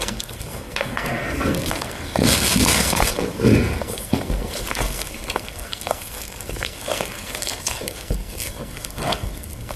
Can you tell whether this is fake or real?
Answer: fake